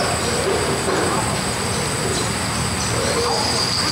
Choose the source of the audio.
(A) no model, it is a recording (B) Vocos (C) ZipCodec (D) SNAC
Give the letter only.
A